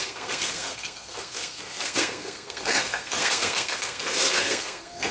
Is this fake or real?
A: fake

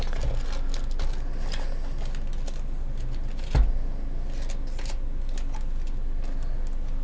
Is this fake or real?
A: real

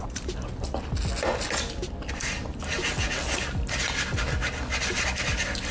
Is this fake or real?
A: real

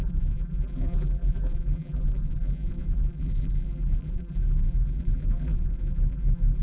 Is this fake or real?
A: fake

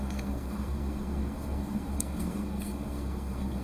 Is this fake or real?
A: fake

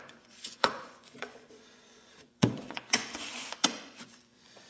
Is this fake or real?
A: fake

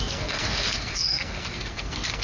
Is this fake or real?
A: fake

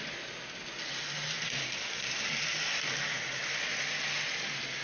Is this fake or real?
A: real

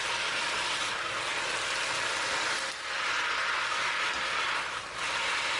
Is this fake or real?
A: real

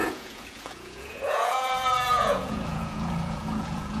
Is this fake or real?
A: fake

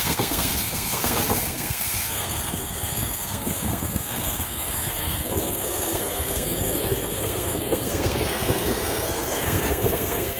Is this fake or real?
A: fake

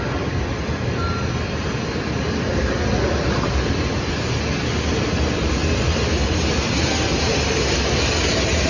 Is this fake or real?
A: real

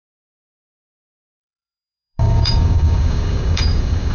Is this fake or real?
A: fake